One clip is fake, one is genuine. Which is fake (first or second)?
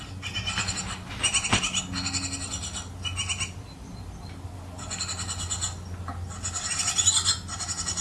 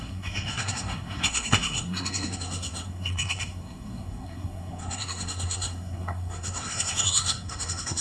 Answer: second